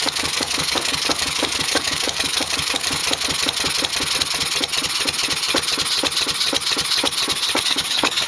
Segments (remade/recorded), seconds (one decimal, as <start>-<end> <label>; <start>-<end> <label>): 0.0-3.0 remade; 3.0-7.6 recorded; 7.6-8.3 remade